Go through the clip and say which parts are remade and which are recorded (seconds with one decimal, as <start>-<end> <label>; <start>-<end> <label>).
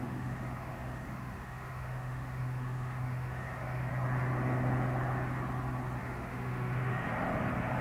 0.0-3.9 remade; 3.9-6.0 recorded; 6.0-7.1 remade; 7.1-7.8 recorded